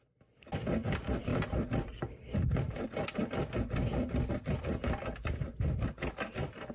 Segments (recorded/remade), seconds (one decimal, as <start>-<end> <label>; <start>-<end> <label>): 0.0-6.7 recorded